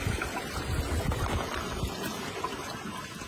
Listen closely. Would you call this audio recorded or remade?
recorded